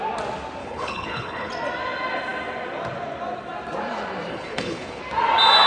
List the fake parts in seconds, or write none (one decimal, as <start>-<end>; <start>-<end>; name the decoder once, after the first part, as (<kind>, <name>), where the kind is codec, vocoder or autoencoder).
0.6-1.5 (codec, HILCodec); 4.3-5.0